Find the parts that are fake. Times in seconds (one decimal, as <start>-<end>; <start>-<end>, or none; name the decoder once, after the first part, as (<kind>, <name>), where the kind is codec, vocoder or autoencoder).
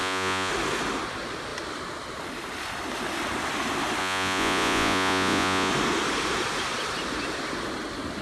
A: 0.0-0.5 (vocoder, Vocos); 4.0-5.7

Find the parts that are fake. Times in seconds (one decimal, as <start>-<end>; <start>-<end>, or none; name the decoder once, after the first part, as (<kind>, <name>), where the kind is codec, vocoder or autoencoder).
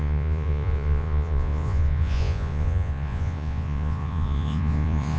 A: 0.0-5.2 (vocoder, Vocos)